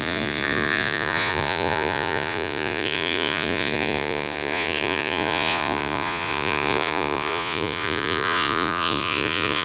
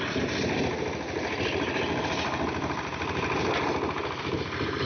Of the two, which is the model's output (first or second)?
first